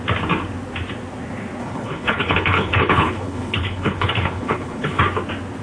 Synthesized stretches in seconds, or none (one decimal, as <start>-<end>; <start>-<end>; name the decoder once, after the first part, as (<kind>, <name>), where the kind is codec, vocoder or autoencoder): 1.6-5.0 (codec, HILCodec)